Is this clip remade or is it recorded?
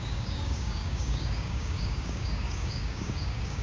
remade